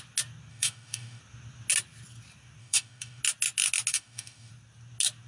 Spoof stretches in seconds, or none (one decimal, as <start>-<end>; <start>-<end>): 0.5-1.2; 2.6-3.2; 3.9-4.5